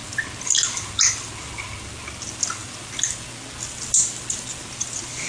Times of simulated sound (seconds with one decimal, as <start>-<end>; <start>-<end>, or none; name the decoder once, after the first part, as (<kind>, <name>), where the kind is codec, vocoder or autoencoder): none